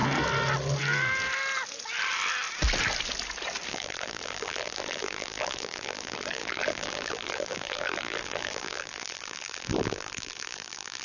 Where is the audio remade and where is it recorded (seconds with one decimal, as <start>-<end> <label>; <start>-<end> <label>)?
0.0-3.7 recorded; 3.7-11.0 remade